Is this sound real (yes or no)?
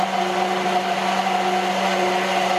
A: yes